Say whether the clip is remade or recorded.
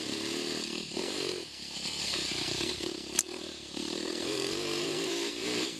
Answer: remade